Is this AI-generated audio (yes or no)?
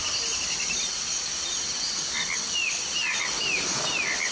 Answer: no